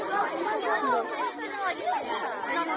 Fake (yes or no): no